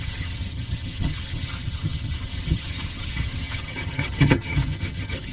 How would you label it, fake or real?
fake